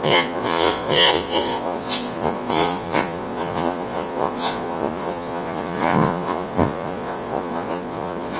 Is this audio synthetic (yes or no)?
yes